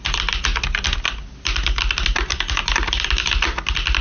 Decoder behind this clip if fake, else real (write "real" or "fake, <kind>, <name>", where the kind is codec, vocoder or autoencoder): real